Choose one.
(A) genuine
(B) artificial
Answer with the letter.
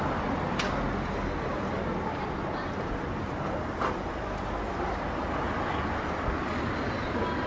A